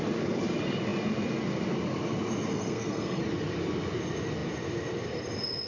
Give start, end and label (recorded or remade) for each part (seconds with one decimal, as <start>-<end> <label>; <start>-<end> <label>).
0.0-2.5 recorded; 2.5-3.2 remade; 3.2-5.7 recorded